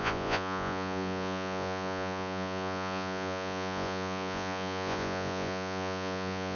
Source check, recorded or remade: remade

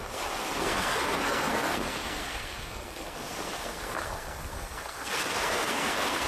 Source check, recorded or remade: remade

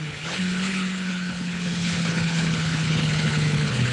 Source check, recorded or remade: remade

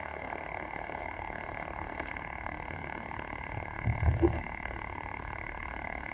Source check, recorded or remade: remade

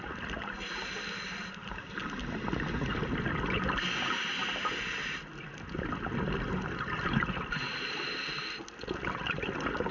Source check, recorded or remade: recorded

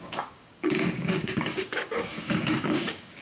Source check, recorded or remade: remade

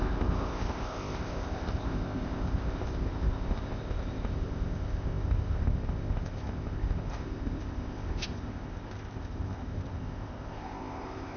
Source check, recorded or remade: remade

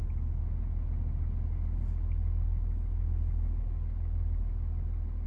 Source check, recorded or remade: recorded